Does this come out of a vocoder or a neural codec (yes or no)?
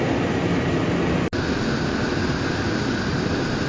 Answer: no